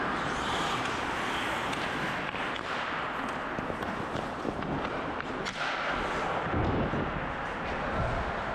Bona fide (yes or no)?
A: yes